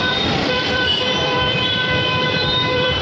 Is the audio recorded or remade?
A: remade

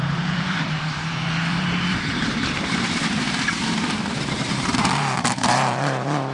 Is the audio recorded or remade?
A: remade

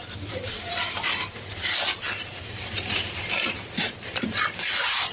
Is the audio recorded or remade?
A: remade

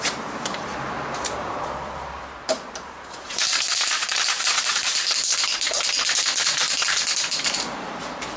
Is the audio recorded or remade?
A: remade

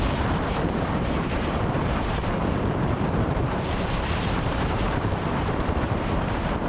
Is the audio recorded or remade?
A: remade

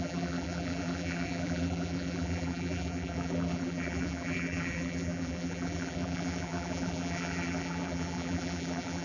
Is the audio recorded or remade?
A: remade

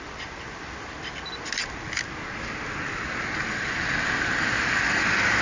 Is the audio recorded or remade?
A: recorded